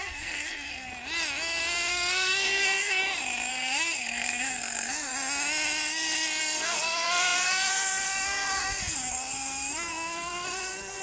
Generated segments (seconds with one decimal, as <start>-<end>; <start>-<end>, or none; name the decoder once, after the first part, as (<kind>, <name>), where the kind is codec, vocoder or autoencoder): 0.0-0.9 (codec, SNAC); 1.9-3.0; 3.5-5.1; 6.4-11.0